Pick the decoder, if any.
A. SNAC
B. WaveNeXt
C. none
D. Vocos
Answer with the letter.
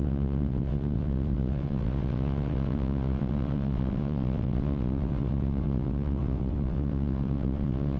B